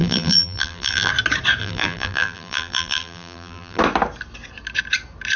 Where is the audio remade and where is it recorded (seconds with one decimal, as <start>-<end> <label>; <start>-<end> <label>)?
0.0-1.1 remade; 1.1-1.6 recorded; 1.6-3.8 remade; 3.8-5.4 recorded